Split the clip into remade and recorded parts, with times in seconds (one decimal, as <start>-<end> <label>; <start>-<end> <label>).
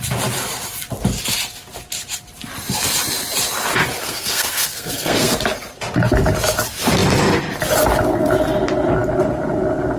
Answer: 0.0-4.0 recorded; 4.0-5.4 remade; 5.4-10.0 recorded